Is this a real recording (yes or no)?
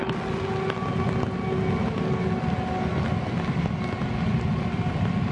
yes